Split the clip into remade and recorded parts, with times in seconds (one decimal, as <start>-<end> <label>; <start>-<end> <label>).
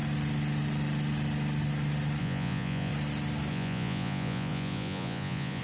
0.0-2.2 recorded; 2.2-2.9 remade; 2.9-3.5 recorded; 3.5-5.6 remade